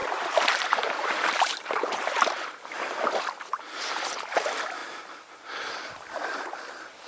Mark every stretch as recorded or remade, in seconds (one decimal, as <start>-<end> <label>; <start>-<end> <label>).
0.0-3.1 remade; 3.1-7.1 recorded